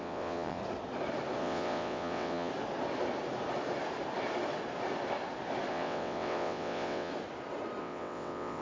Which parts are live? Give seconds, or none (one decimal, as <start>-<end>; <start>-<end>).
0.6-1.4; 2.5-5.7; 7.1-7.8